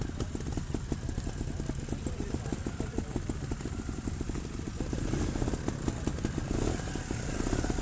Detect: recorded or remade recorded